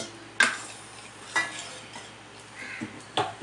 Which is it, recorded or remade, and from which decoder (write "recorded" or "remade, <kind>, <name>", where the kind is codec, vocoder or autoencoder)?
recorded